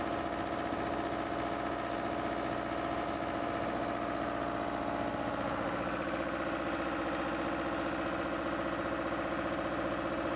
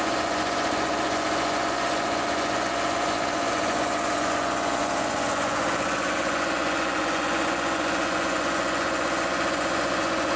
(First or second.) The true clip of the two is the first